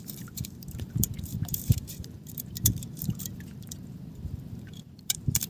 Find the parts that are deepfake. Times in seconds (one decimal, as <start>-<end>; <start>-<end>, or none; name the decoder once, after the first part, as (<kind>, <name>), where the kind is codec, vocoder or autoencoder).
0.0-5.5 (vocoder, BigVGAN v2)